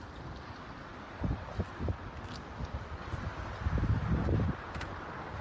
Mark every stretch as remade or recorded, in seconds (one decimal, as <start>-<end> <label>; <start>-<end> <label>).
0.0-5.4 recorded